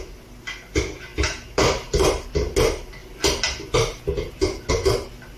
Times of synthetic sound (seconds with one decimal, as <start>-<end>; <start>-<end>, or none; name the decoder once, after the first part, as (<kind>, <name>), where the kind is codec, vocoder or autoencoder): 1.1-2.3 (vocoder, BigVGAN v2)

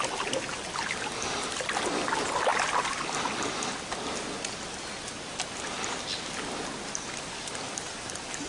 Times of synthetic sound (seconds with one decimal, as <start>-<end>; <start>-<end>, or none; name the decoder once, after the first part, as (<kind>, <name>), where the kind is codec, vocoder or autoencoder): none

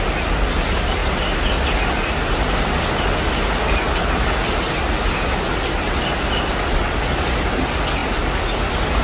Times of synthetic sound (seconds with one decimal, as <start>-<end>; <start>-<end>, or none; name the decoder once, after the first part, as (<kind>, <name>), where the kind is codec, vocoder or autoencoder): none

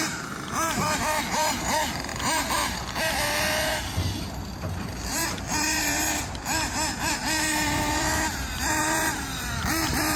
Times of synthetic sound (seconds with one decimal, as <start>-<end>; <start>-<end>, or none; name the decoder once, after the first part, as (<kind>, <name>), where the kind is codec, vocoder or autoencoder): 0.0-4.0 (vocoder, BigVGAN v2); 4.6-10.2

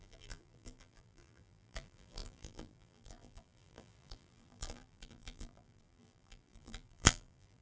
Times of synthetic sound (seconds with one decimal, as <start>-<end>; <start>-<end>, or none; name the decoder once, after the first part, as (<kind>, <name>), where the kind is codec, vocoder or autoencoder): 0.0-7.6 (vocoder, BigVGAN v2)

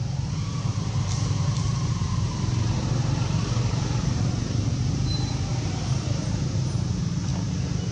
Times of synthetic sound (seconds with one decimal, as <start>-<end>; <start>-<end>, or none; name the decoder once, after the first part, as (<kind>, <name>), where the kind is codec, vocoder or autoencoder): 0.0-7.3 (vocoder, BigVGAN v2)

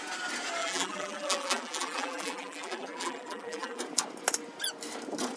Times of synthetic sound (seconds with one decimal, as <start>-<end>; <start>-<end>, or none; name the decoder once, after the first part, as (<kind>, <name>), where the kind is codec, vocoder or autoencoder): 0.6-3.8 (vocoder, BigVGAN v2)